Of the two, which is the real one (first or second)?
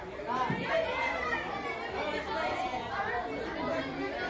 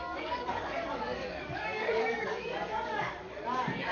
first